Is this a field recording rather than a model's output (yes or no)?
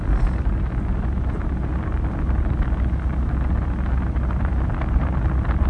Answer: yes